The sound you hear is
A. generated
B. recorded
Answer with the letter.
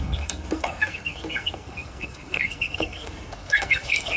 A